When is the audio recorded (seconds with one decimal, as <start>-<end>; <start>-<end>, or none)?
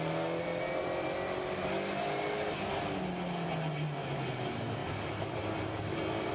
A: 0.0-6.3